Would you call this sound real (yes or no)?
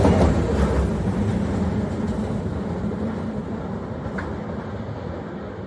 yes